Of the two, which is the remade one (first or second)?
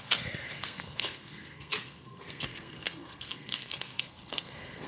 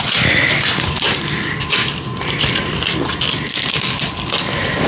first